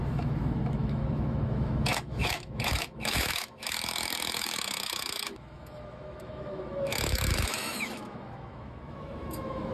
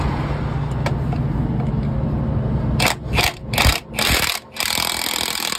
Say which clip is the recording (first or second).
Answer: second